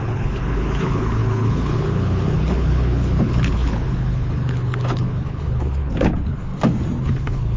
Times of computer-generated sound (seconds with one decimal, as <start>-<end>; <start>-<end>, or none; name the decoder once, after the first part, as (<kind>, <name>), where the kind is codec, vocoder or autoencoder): 0.0-6.5 (codec, HILCodec); 7.0-7.6